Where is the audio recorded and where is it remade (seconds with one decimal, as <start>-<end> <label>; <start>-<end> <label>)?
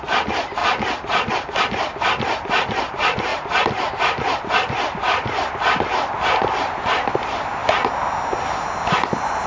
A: 0.0-0.6 remade; 0.6-1.3 recorded; 1.3-3.3 remade; 3.3-3.9 recorded; 3.9-7.6 remade; 7.6-8.5 recorded; 8.5-9.5 remade